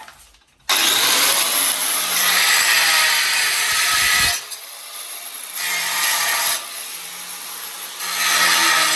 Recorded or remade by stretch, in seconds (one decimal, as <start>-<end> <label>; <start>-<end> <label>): 0.0-1.8 recorded; 1.8-7.1 remade; 7.1-9.0 recorded